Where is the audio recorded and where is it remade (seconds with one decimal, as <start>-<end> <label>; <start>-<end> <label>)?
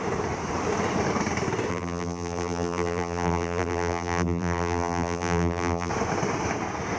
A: 0.0-1.7 recorded; 1.7-5.9 remade; 5.9-7.0 recorded